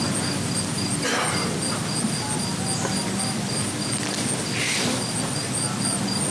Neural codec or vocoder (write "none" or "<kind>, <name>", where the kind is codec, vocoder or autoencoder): none